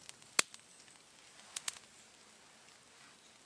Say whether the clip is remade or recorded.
recorded